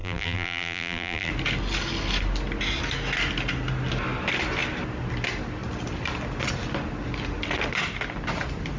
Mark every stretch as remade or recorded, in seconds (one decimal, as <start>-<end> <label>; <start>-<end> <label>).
0.0-1.3 remade; 1.3-8.8 recorded